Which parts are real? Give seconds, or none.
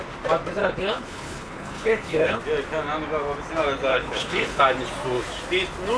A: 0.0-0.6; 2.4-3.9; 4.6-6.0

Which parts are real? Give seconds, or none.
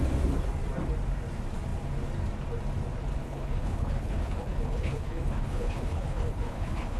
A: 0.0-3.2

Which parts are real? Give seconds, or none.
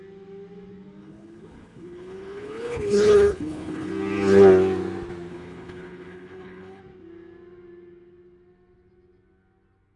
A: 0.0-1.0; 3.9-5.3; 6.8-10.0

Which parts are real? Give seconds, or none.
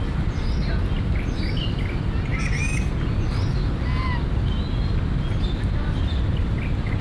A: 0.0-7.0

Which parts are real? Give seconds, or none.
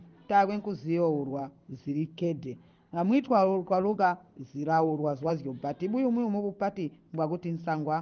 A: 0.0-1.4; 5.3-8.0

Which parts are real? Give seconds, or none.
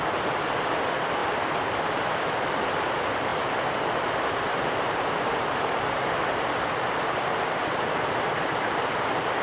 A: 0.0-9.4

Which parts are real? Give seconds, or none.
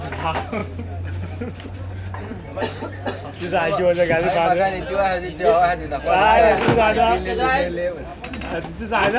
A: 0.0-9.2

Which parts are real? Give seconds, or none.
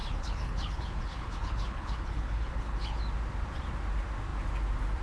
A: 3.0-5.0